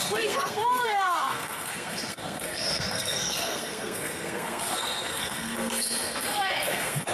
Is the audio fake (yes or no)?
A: yes